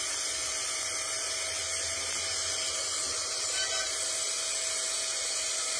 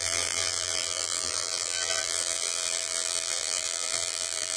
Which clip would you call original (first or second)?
first